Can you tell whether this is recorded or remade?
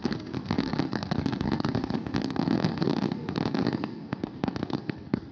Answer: remade